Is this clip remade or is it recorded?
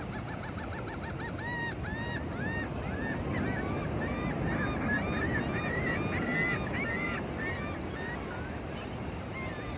recorded